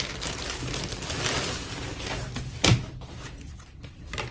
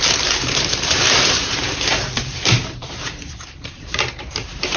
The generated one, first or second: second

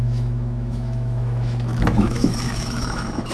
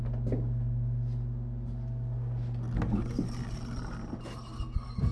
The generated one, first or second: first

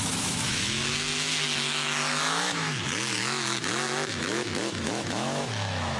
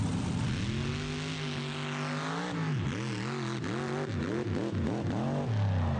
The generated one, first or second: first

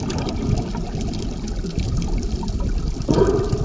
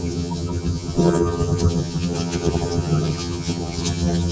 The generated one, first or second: second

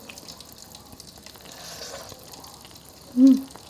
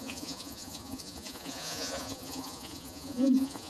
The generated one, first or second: second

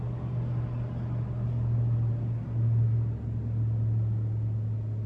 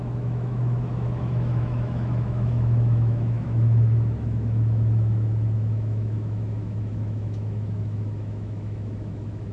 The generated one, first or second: second